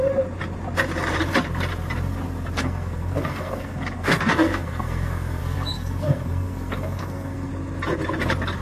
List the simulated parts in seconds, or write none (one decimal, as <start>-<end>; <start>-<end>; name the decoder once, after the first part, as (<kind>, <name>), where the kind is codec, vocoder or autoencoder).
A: 2.6-7.5 (codec, SNAC)